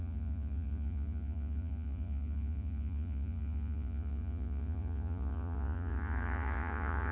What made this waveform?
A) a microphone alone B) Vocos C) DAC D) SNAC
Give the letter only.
B